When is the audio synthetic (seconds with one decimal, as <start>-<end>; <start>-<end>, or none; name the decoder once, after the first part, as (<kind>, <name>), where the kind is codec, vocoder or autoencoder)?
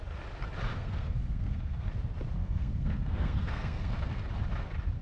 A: 0.7-1.9 (codec, SNAC); 2.4-4.3